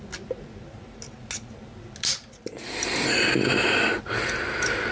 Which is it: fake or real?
real